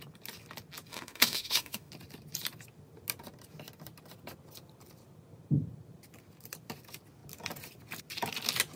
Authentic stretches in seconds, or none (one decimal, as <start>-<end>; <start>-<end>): 0.0-0.9; 1.9-8.8